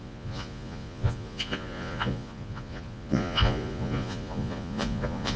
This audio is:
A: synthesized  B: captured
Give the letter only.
A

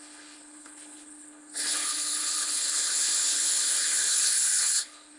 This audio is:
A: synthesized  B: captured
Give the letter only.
A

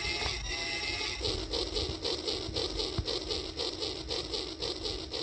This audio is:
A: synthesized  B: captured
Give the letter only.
B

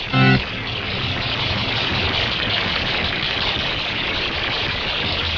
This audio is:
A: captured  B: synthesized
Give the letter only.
B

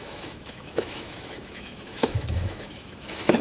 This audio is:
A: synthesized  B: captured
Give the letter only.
A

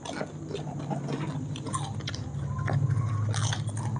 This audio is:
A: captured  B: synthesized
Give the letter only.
A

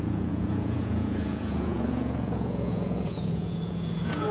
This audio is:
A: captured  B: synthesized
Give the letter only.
B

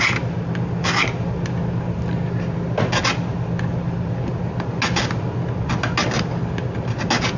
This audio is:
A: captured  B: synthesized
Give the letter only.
A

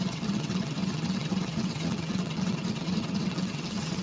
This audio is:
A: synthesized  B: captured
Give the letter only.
A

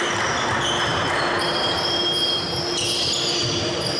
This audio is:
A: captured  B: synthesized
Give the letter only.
A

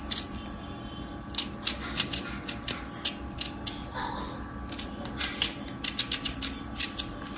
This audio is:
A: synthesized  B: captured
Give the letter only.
B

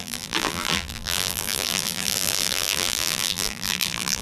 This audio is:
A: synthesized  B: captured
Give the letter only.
A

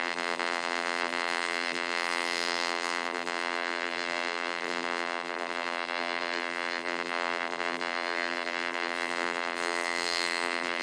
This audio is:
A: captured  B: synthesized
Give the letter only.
B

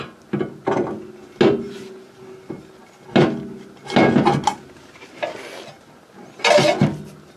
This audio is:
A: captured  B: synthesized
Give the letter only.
A